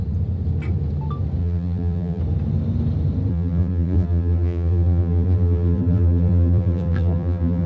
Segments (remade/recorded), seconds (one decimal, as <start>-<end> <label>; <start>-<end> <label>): 0.0-1.4 recorded; 1.4-2.2 remade; 2.2-3.3 recorded; 3.3-7.7 remade